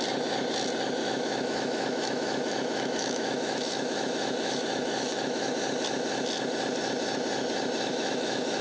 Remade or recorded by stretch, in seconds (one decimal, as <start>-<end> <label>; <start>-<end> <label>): 0.0-1.0 recorded; 1.0-5.5 remade; 5.5-7.9 recorded; 7.9-8.6 remade